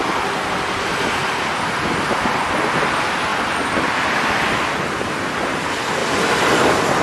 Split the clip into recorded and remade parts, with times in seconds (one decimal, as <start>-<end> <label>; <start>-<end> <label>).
0.0-7.0 recorded